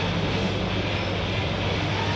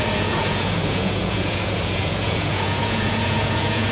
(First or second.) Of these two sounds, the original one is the first